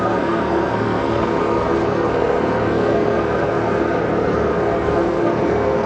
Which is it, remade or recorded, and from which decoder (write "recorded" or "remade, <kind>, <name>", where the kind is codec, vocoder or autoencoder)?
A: remade, codec, SNAC